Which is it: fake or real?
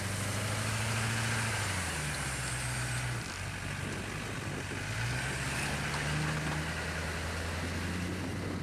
real